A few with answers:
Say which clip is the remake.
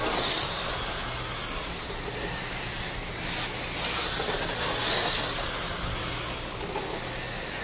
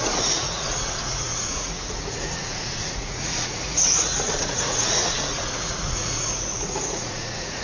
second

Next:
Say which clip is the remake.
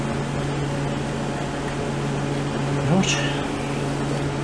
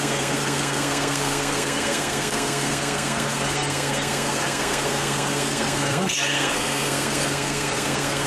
second